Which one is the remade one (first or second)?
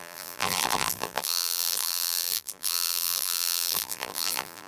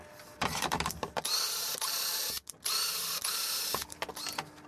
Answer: first